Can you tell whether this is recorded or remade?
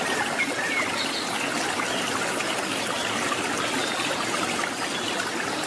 recorded